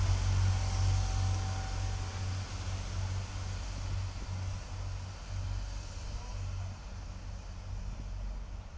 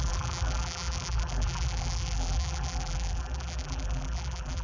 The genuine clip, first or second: first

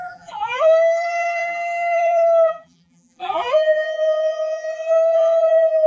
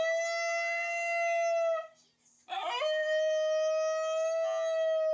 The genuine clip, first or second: second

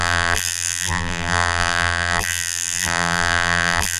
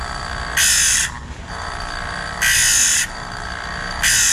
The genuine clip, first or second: second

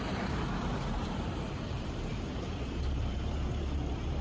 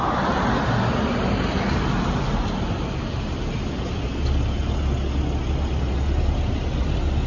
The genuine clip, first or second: second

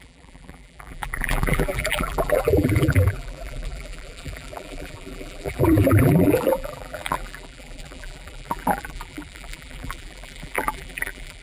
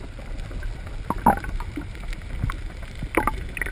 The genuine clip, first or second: second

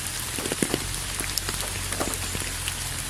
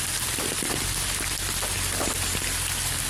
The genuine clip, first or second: first